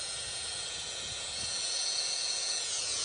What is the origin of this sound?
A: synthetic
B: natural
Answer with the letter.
A